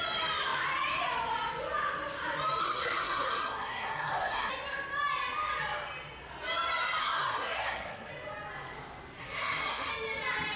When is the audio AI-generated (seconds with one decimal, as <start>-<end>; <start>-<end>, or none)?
2.6-4.5; 7.0-8.1; 9.2-9.9